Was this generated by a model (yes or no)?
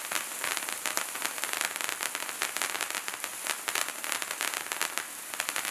yes